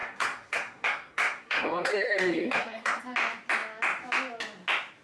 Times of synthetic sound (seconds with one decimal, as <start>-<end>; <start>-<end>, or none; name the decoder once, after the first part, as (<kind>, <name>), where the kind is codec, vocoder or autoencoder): 0.0-3.0 (codec, SNAC)